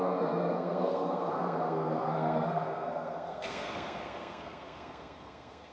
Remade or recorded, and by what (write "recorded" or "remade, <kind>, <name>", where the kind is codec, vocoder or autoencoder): remade, codec, SNAC